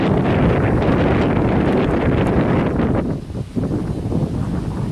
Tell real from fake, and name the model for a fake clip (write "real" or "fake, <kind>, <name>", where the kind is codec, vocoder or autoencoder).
real